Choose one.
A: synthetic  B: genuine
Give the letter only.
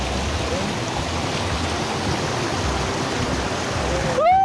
B